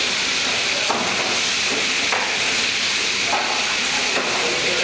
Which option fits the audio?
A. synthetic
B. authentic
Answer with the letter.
B